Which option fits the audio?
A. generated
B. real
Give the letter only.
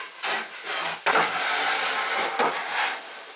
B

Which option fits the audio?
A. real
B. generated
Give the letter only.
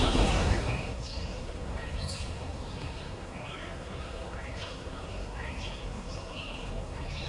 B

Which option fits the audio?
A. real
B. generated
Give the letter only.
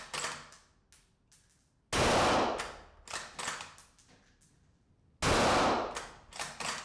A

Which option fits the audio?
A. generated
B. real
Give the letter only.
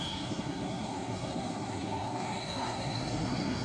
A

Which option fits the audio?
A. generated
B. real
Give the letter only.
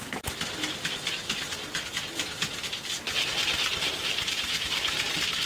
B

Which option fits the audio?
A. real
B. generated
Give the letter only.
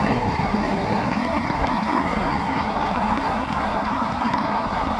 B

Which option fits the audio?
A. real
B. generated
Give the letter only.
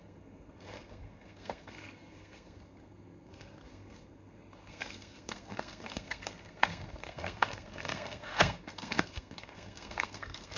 B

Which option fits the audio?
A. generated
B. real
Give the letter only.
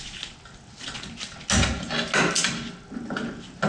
B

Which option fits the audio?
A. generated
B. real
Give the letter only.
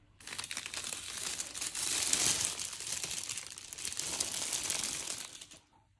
B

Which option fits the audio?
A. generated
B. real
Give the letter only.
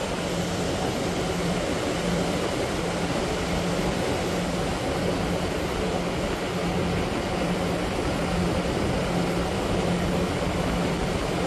B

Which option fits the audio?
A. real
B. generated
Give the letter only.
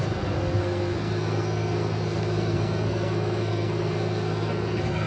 B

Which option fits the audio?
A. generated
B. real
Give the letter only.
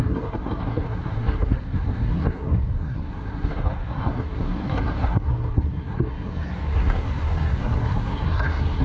A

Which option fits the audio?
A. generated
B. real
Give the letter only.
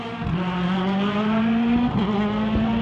B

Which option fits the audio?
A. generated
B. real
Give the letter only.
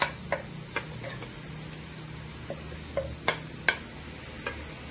B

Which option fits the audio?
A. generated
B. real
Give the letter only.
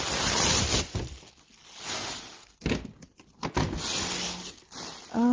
B